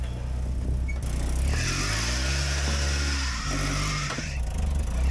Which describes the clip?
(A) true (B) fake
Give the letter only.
A